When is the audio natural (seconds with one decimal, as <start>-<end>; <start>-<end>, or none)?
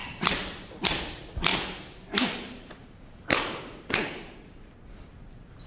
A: 1.0-1.5; 4.9-5.7